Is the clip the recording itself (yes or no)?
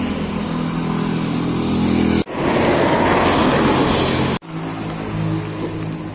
yes